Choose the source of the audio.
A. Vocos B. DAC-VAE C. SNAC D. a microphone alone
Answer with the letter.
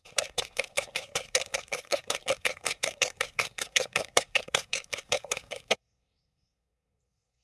C